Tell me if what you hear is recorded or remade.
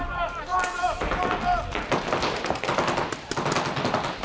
recorded